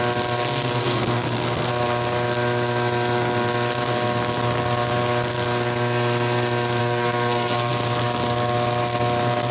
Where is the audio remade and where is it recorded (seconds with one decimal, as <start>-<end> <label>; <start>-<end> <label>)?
0.0-0.8 recorded; 0.8-1.7 remade; 1.7-6.8 recorded; 6.8-7.7 remade; 7.7-9.5 recorded